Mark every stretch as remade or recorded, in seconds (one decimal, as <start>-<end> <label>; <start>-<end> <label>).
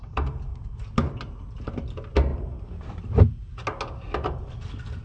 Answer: 0.0-0.5 recorded; 0.5-1.1 remade; 1.1-2.3 recorded; 2.3-2.9 remade; 2.9-5.0 recorded